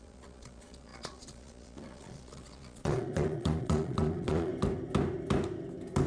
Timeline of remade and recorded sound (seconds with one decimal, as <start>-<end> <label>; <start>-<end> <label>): 0.0-4.5 remade; 4.5-6.1 recorded